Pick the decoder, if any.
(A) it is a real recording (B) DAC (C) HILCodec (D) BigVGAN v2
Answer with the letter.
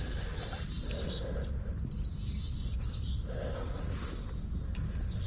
A